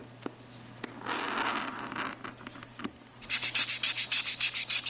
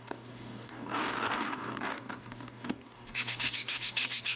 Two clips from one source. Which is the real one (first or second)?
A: first